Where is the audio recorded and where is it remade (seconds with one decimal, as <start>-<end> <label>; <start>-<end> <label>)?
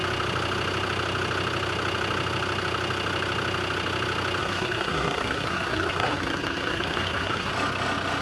0.0-4.4 recorded; 4.4-7.5 remade; 7.5-8.2 recorded